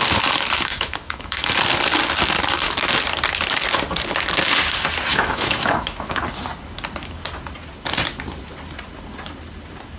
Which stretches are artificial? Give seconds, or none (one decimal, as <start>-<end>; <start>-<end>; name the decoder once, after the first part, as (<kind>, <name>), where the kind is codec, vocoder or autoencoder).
0.7-1.5 (autoencoder, DAC-VAE); 5.1-6.2